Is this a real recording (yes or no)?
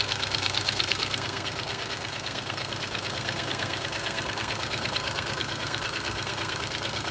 no